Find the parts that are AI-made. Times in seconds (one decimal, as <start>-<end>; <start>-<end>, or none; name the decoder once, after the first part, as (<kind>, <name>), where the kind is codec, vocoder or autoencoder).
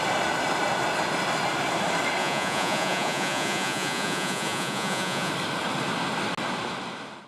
2.2-5.3 (vocoder, Vocos)